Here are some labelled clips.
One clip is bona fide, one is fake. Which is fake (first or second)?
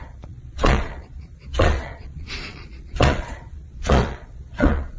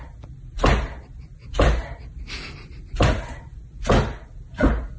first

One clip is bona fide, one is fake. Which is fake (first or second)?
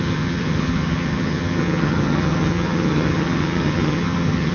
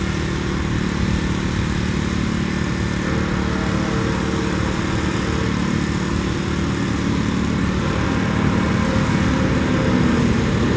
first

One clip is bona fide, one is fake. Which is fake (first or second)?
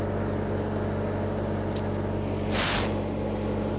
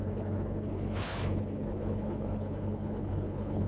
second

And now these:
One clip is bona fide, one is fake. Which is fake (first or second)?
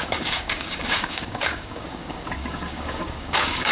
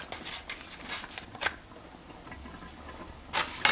first